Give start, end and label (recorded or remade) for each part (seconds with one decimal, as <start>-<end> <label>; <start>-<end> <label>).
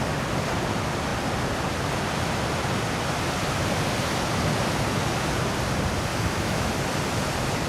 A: 0.0-6.1 recorded; 6.1-6.7 remade; 6.7-7.7 recorded